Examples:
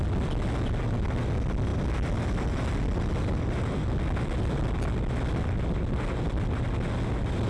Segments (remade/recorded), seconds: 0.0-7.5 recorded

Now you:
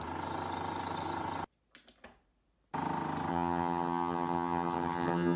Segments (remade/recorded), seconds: 0.0-3.3 recorded; 3.3-5.4 remade

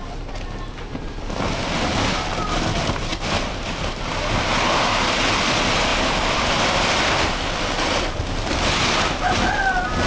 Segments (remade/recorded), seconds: 0.0-3.1 recorded; 3.1-4.1 remade; 4.1-5.9 recorded; 5.9-7.2 remade; 7.2-10.1 recorded